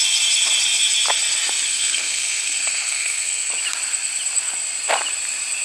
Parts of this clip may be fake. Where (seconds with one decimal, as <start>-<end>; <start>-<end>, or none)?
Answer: 1.7-3.5